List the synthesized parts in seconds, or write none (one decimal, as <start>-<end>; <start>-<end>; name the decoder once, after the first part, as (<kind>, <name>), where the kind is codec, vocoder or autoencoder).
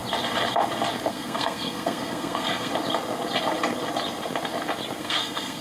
1.1-2.7 (codec, SNAC); 5.0-5.6